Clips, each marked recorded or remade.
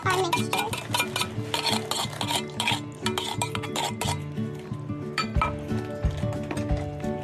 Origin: recorded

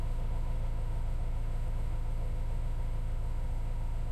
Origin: remade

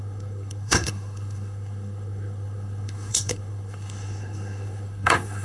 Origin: remade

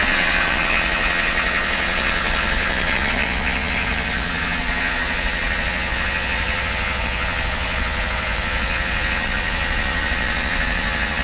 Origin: remade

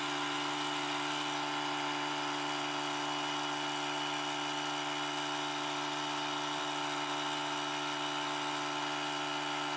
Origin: recorded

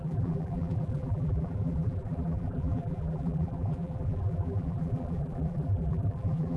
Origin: remade